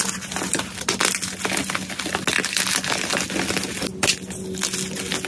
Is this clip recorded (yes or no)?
yes